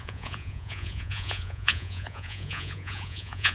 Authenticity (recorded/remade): remade